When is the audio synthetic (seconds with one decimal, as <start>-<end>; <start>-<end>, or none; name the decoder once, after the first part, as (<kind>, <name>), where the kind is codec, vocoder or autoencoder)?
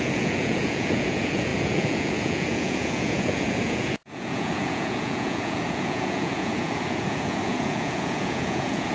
0.0-8.9 (vocoder, Vocos)